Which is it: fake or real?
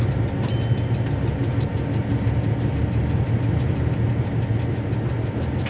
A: real